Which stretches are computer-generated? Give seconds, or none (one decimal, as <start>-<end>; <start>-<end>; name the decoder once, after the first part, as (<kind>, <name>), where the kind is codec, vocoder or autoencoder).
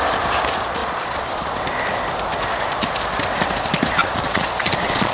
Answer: 0.8-1.5 (vocoder, Vocos); 4.0-5.1